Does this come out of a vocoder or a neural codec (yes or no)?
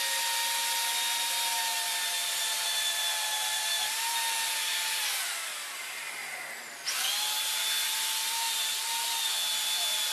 no